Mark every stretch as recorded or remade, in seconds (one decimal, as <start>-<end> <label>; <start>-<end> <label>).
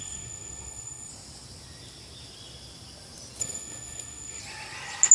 0.0-1.1 remade; 1.1-3.4 recorded; 3.4-4.4 remade; 4.4-5.1 recorded